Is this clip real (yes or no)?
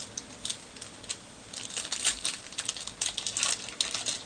yes